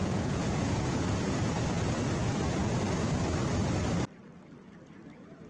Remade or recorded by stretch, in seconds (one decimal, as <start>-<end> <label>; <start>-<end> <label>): 0.0-1.5 remade; 1.5-5.5 recorded